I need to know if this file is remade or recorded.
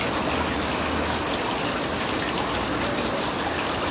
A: recorded